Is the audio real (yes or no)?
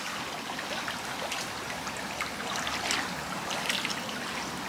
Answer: yes